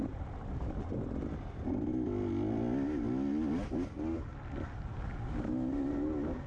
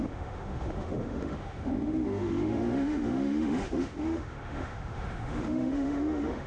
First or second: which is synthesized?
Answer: second